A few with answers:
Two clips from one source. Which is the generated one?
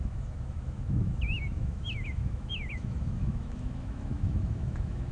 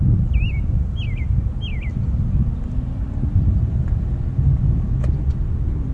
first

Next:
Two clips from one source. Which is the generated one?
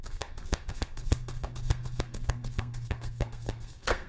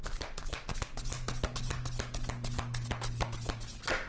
first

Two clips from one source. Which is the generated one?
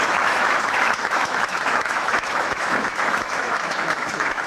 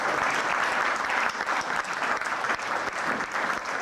first